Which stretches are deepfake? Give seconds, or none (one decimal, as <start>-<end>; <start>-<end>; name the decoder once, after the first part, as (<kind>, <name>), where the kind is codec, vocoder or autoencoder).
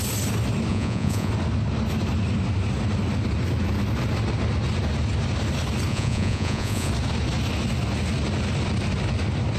0.7-1.3 (vocoder, Vocos); 5.9-6.9